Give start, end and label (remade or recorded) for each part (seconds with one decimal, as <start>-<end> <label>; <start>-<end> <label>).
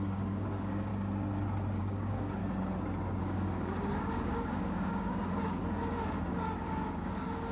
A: 0.0-0.9 remade; 0.9-1.8 recorded; 1.8-2.4 remade; 2.4-3.2 recorded; 3.2-5.6 remade; 5.6-6.3 recorded; 6.3-7.5 remade